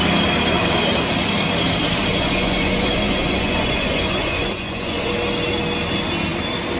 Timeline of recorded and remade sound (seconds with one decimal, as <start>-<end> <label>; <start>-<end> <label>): 0.0-2.1 recorded; 2.1-5.1 remade; 5.1-6.8 recorded